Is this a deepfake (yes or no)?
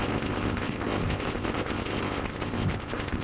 yes